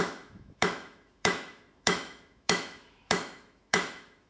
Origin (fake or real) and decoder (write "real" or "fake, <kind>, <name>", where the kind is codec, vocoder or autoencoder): fake, autoencoder, DAC-VAE